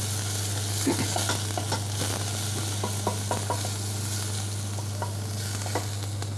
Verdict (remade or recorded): recorded